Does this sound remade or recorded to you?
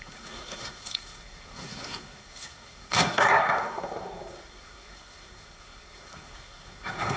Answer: remade